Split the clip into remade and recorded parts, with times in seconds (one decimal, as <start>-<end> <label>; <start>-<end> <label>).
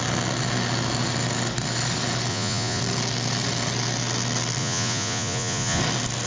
0.0-2.3 recorded; 2.3-2.8 remade; 2.8-4.6 recorded; 4.6-5.8 remade; 5.8-6.3 recorded